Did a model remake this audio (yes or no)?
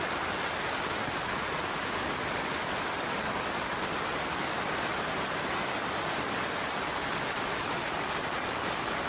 no